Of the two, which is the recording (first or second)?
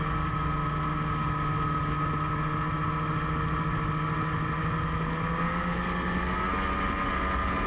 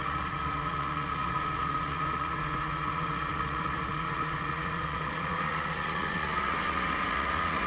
first